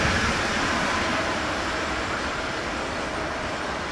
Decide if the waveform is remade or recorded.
recorded